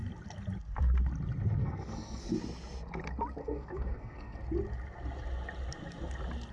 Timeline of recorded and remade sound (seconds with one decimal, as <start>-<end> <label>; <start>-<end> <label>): 0.0-1.6 recorded; 1.6-2.2 remade; 2.2-3.4 recorded; 3.4-4.4 remade; 4.4-6.5 recorded